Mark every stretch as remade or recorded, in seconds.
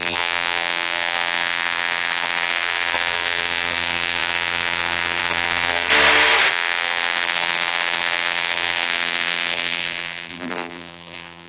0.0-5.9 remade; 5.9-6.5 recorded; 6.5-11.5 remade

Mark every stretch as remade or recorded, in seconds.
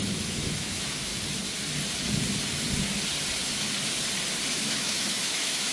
0.0-1.1 remade; 1.1-4.5 recorded; 4.5-5.7 remade